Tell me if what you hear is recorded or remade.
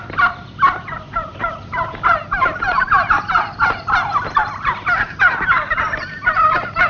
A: remade